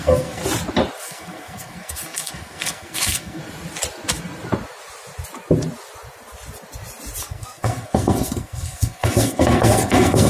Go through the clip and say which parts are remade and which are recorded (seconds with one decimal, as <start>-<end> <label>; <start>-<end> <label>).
0.0-0.4 remade; 0.4-1.0 recorded; 1.0-3.4 remade; 3.4-7.2 recorded; 7.2-10.3 remade